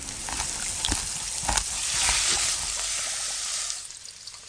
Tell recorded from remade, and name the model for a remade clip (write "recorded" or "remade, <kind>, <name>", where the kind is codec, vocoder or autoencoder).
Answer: recorded